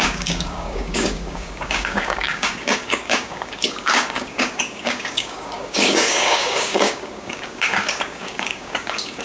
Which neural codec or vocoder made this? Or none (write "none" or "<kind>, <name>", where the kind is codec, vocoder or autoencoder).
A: codec, DAC